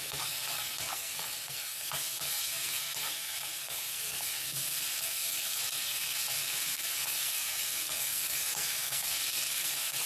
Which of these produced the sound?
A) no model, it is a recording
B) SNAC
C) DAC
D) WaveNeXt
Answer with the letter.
B